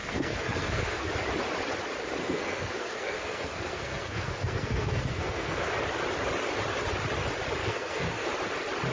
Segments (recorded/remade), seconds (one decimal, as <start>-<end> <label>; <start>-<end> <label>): 0.0-1.1 remade; 1.1-2.2 recorded; 2.2-5.7 remade; 5.7-7.6 recorded; 7.6-8.3 remade; 8.3-8.9 recorded